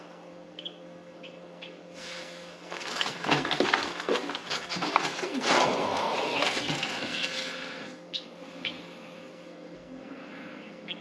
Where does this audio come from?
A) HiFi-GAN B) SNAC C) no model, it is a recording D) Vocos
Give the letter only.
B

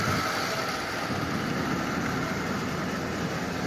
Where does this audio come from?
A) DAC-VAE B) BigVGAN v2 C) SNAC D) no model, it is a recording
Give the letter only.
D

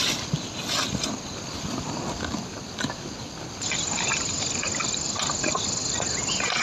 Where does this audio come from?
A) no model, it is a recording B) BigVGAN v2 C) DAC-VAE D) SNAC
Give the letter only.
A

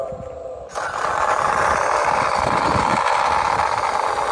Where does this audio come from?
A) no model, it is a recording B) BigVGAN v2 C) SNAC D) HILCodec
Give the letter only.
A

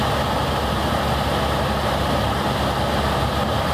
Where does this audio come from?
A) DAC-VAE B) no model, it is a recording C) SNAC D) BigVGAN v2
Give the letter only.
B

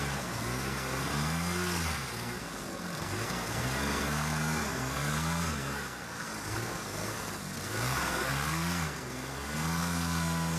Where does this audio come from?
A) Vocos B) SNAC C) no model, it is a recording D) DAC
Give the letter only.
B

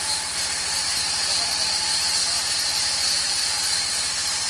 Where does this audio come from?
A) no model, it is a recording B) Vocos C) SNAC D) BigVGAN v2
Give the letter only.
A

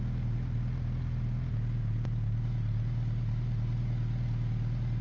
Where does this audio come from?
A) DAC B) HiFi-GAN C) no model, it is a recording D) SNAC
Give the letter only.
C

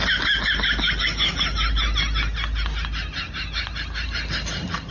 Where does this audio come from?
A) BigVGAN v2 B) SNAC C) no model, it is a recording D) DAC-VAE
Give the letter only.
C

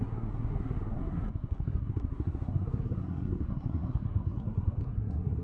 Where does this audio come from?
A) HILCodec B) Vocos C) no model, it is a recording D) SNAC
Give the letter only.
D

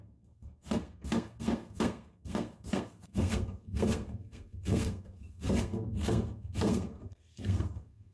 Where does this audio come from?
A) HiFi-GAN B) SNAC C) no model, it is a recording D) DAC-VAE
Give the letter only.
B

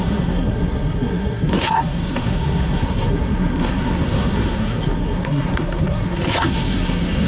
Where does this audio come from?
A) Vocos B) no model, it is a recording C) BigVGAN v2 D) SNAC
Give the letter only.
D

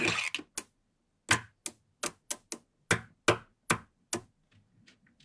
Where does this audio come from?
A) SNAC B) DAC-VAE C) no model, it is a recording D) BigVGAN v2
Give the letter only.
C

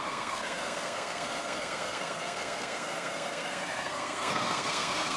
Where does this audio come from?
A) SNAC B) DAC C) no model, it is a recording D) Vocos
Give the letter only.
A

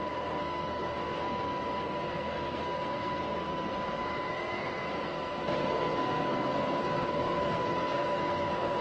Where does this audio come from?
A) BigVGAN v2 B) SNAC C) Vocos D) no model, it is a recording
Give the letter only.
B